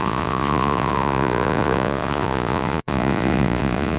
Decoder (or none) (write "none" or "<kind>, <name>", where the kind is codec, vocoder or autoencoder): vocoder, Vocos